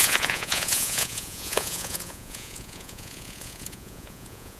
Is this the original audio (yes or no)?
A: no